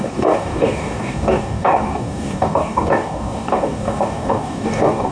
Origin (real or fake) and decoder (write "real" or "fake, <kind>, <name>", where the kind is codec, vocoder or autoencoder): fake, codec, DAC